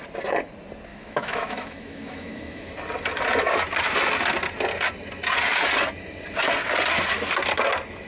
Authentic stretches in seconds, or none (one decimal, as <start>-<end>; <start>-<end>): 0.0-0.9; 2.7-8.1